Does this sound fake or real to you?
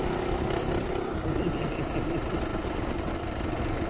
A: real